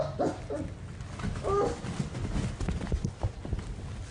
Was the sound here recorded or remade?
recorded